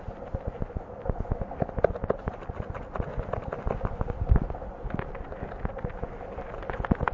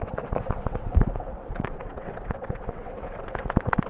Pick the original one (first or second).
first